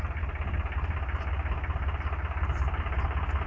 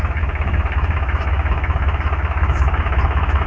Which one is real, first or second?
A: first